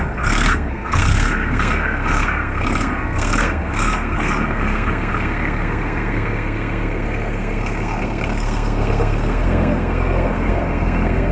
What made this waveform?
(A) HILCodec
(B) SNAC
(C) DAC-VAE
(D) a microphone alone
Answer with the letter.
B